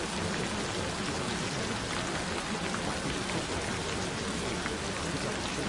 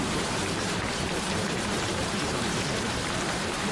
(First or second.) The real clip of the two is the first